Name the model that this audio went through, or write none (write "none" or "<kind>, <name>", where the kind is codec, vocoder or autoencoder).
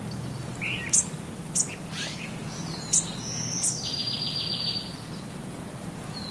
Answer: none